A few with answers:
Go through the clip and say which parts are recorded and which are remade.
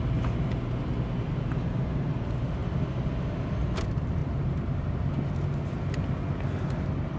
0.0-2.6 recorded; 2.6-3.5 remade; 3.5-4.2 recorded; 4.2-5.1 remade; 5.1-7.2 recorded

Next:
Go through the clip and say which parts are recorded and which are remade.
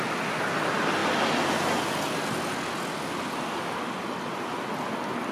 0.0-5.3 recorded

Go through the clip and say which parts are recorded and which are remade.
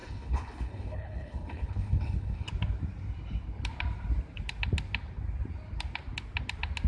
0.0-2.5 remade; 2.5-6.9 recorded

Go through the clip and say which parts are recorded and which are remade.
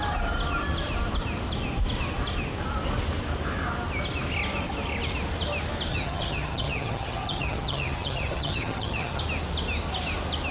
0.0-5.9 recorded; 5.9-9.2 remade; 9.2-10.5 recorded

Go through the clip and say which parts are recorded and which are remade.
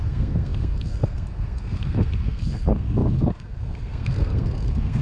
0.0-5.0 remade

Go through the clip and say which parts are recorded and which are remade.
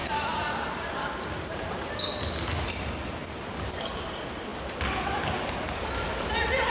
0.0-6.7 recorded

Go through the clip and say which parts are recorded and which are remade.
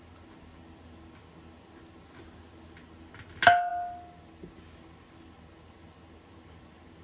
0.0-7.0 recorded